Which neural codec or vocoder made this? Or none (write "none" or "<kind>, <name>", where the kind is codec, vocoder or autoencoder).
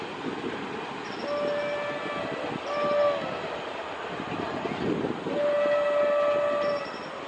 none